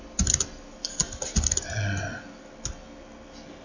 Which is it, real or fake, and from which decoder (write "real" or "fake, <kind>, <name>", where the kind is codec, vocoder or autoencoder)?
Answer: real